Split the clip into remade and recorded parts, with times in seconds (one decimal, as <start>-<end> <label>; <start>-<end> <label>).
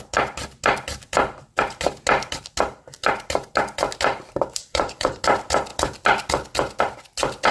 0.0-4.6 recorded; 4.6-5.2 remade; 5.2-7.5 recorded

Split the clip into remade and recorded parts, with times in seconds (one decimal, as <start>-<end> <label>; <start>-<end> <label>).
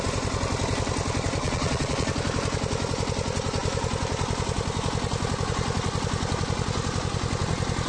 0.0-1.4 recorded; 1.4-2.1 remade; 2.1-7.9 recorded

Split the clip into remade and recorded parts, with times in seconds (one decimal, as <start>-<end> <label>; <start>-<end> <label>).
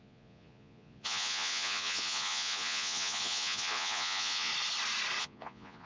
0.0-4.5 remade; 4.5-5.2 recorded; 5.2-5.9 remade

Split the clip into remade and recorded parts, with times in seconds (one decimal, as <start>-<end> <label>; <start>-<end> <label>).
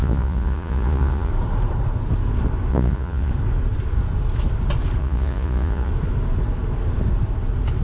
0.0-1.3 remade; 1.3-2.7 recorded; 2.7-3.3 remade; 3.3-5.0 recorded; 5.0-5.9 remade; 5.9-7.8 recorded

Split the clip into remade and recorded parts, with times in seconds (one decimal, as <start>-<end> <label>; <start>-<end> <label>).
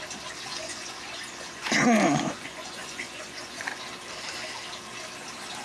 0.0-0.5 recorded; 0.5-3.8 remade; 3.8-5.6 recorded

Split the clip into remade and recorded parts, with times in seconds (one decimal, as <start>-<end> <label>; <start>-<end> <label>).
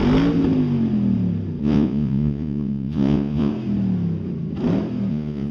0.0-1.6 recorded; 1.6-3.5 remade; 3.5-5.1 recorded; 5.1-5.5 remade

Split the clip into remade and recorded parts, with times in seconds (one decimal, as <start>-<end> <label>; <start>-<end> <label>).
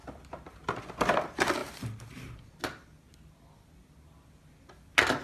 0.0-5.2 recorded